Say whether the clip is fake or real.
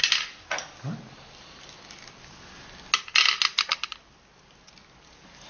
real